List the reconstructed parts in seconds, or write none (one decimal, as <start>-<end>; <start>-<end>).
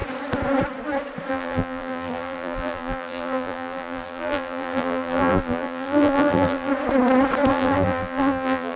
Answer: 1.3-6.7; 7.5-8.8